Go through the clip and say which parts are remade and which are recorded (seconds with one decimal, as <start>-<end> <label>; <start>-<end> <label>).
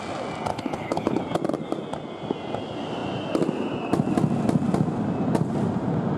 0.0-0.5 recorded; 0.5-1.2 remade; 1.2-6.2 recorded